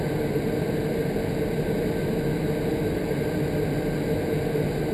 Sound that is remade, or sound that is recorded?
recorded